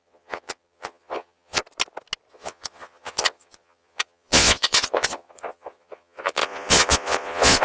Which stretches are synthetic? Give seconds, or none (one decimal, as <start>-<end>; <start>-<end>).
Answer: 0.0-1.6; 2.3-7.6